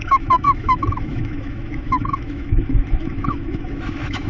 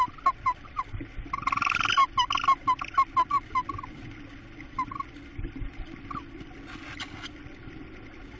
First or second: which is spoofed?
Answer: first